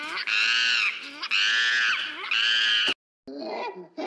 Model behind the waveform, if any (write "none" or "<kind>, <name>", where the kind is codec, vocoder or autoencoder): none